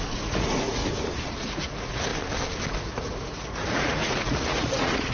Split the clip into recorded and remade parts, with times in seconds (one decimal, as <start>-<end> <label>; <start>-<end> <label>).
0.0-0.8 remade; 0.8-1.3 recorded; 1.3-2.1 remade; 2.1-2.7 recorded; 2.7-5.1 remade